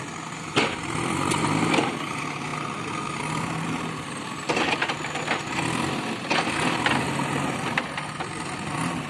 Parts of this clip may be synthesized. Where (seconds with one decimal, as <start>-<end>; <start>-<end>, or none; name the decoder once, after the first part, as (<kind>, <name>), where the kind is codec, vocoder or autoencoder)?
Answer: none